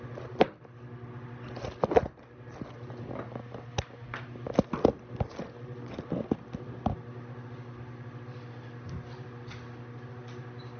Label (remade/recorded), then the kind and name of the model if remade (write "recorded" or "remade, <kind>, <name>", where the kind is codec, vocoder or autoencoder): recorded